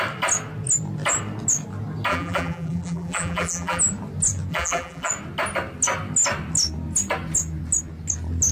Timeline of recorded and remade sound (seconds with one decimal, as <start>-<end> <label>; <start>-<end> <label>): 0.0-2.1 recorded; 2.1-3.8 remade; 3.8-4.5 recorded; 4.5-5.1 remade; 5.1-8.5 recorded